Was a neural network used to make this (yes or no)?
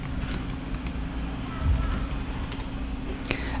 no